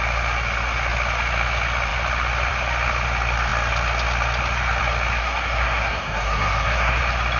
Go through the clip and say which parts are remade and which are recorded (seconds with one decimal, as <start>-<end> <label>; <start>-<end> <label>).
0.0-5.2 recorded; 5.2-7.0 remade; 7.0-7.4 recorded